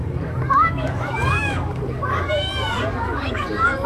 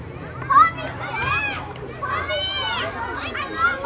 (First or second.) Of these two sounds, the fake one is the first